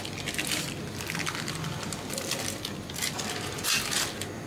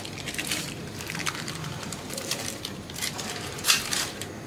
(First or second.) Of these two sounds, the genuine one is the first